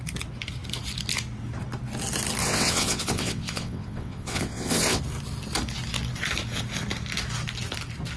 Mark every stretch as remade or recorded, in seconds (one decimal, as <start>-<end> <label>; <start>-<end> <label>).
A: 0.0-2.4 recorded; 2.4-5.0 remade; 5.0-8.2 recorded